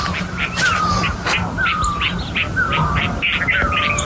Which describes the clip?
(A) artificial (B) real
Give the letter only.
B